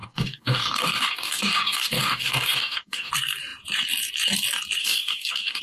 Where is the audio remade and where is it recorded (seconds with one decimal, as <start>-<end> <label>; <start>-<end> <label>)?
0.0-3.1 remade; 3.1-4.8 recorded; 4.8-5.6 remade

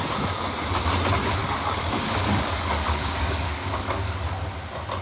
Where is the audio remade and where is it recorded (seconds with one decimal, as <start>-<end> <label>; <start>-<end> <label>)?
0.0-1.4 recorded; 1.4-4.4 remade; 4.4-5.0 recorded